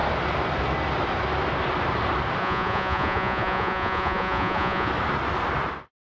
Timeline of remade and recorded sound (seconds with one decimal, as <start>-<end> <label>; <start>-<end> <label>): 0.0-2.4 recorded; 2.4-4.9 remade; 4.9-6.0 recorded